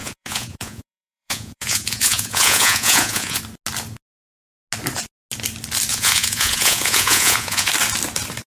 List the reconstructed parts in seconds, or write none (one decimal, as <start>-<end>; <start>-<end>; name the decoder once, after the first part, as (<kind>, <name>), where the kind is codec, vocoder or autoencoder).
0.0-3.4 (vocoder, Vocos); 5.9-7.7